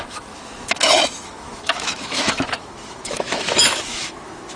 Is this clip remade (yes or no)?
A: yes